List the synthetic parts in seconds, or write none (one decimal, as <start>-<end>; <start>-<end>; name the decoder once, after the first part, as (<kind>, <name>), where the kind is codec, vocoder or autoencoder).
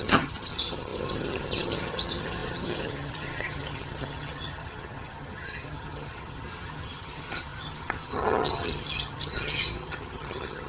0.0-10.7 (vocoder, HiFi-GAN)